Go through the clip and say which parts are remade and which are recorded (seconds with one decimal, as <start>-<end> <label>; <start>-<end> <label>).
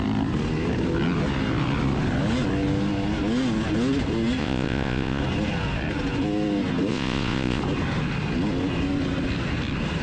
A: 0.0-4.4 recorded; 4.4-5.2 remade; 5.2-6.9 recorded; 6.9-7.6 remade; 7.6-10.0 recorded